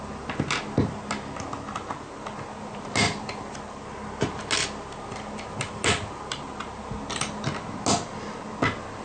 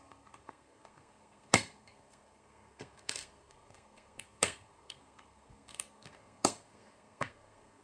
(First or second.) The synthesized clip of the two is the second